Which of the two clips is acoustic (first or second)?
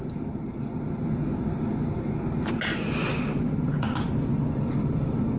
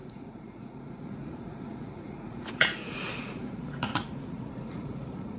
first